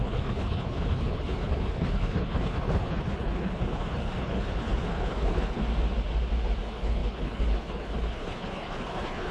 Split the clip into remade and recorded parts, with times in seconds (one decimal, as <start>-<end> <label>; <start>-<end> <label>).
0.0-5.6 remade; 5.6-6.6 recorded; 6.6-9.3 remade